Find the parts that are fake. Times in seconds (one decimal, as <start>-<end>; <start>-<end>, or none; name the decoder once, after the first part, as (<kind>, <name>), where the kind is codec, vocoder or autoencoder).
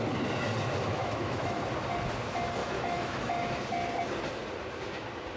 0.9-1.6 (autoencoder, DAC-VAE); 2.6-3.6